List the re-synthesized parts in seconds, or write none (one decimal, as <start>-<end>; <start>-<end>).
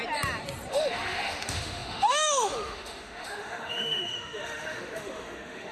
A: 0.7-5.7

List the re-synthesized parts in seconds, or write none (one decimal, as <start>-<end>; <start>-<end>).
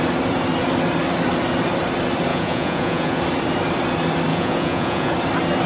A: 2.3-3.2; 4.3-5.1